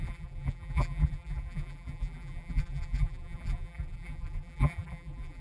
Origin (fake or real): fake